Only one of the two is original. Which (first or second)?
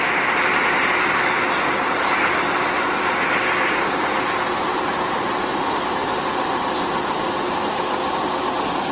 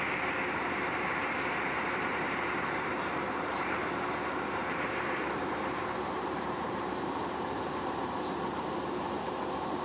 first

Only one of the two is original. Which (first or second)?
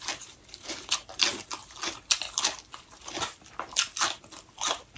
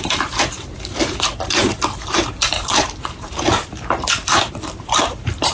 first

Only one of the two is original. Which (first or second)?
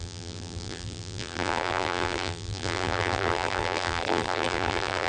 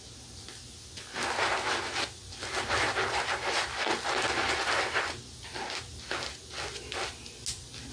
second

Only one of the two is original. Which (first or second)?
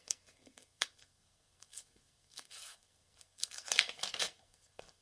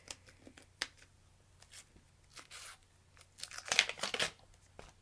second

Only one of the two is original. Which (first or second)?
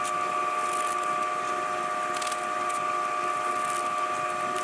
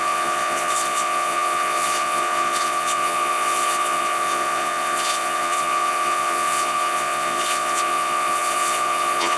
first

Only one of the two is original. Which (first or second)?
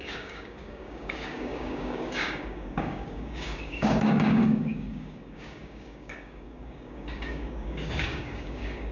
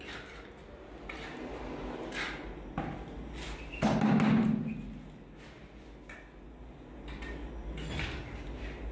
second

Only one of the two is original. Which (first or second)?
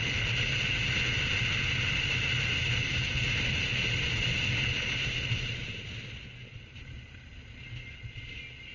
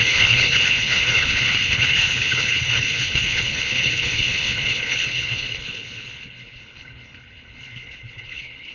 first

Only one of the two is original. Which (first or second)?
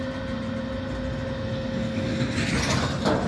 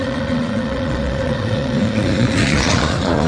first